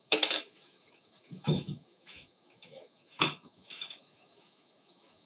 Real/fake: fake